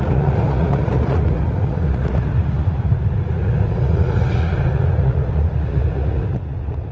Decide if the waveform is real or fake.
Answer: fake